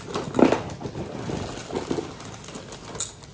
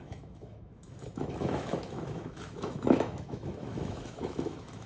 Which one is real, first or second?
first